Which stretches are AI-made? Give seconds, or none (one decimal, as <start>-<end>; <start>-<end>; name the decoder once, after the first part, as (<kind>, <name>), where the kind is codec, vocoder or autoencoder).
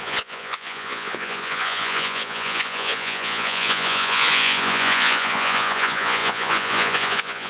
0.0-7.5 (vocoder, Vocos)